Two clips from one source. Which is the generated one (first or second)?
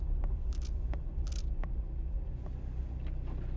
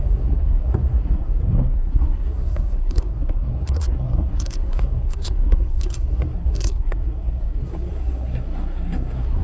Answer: second